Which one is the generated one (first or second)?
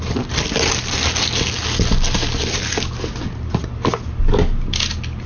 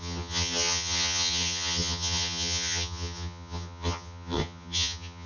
second